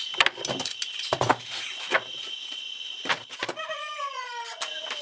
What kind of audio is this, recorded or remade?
recorded